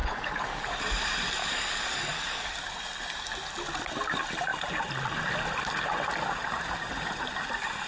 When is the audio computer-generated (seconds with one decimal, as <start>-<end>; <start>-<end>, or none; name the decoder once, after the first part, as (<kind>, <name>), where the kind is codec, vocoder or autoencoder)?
0.0-0.8 (codec, DAC); 1.4-2.5

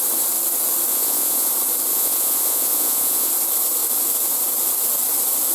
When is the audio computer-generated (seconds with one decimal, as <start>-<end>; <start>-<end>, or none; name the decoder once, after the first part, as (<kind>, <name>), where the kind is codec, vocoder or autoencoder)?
0.9-1.5 (vocoder, Vocos); 1.9-3.3